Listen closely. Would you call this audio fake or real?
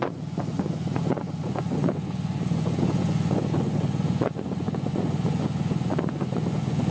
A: fake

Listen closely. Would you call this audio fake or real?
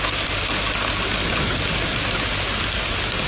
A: real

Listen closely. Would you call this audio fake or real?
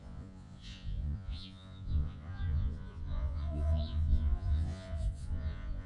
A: fake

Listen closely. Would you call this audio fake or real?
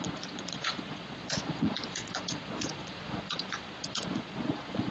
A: fake